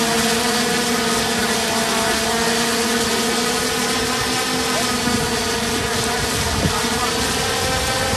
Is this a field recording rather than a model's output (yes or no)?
yes